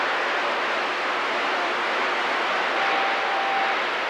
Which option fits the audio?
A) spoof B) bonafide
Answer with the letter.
B